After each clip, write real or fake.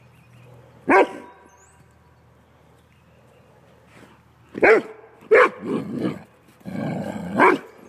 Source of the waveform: real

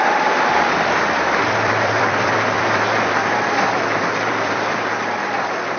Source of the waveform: fake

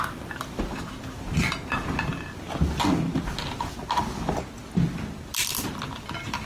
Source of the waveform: real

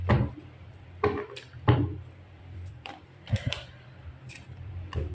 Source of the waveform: fake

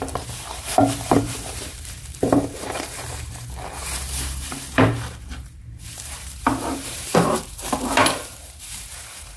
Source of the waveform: fake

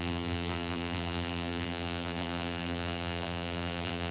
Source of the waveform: fake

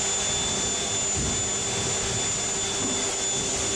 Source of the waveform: real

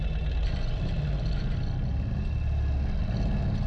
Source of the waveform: real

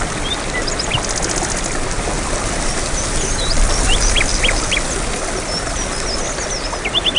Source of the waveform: real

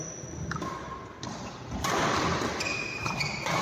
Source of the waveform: real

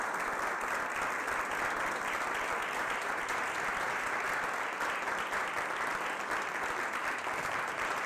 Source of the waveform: real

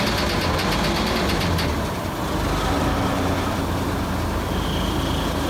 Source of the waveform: real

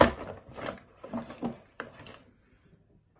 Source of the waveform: fake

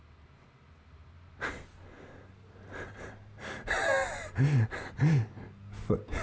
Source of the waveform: real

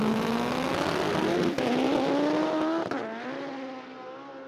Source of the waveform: real